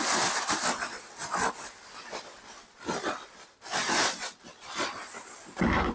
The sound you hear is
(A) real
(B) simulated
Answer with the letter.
A